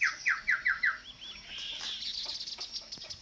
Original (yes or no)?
yes